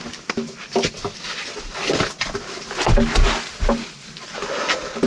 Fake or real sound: real